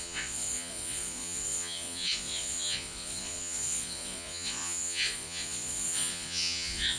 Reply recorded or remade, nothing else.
remade